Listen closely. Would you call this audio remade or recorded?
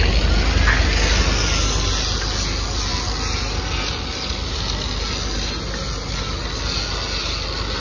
recorded